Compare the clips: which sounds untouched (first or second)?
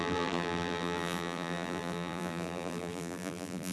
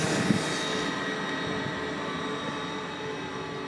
second